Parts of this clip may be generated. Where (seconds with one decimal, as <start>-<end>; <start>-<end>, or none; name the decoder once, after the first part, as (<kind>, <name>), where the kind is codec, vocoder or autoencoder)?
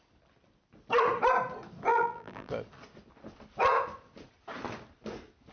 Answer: 1.9-2.5 (vocoder, BigVGAN v2)